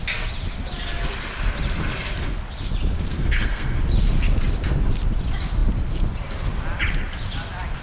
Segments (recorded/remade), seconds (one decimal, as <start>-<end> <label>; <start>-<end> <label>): 0.0-3.1 recorded; 3.1-3.8 remade; 3.8-7.8 recorded